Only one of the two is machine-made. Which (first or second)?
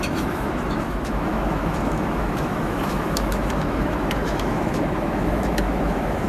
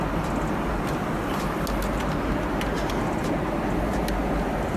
first